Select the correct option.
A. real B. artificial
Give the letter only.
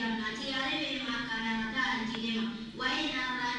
B